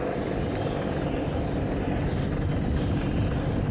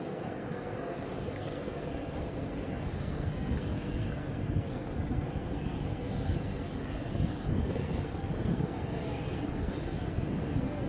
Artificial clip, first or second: second